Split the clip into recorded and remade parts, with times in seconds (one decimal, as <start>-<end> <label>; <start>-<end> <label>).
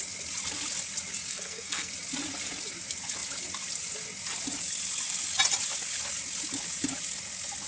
0.0-1.3 recorded; 1.3-1.9 remade; 1.9-7.7 recorded